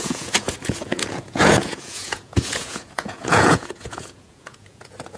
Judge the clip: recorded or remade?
remade